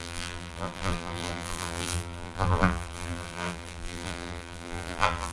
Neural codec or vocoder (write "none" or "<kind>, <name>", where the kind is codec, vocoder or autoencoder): vocoder, BigVGAN v2